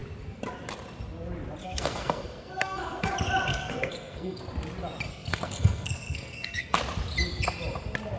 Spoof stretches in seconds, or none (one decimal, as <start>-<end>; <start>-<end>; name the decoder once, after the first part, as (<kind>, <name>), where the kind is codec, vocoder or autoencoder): 1.6-3.1 (codec, SNAC); 3.5-4.4; 5.1-6.8